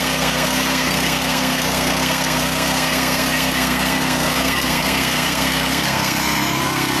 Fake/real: fake